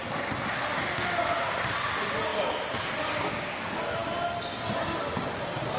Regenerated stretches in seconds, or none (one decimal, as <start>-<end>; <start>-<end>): none